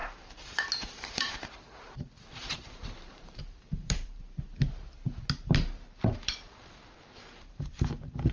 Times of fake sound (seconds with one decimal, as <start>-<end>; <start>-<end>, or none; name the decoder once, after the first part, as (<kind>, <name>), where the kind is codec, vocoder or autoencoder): 0.0-4.2 (vocoder, BigVGAN v2); 6.6-7.7